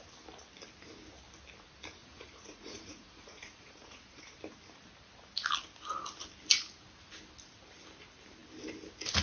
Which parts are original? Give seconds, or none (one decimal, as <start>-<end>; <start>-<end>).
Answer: 0.0-2.0; 4.2-9.2